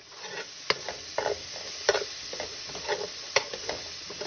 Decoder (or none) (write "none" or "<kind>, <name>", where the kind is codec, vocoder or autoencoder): none